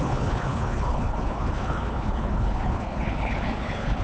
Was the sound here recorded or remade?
remade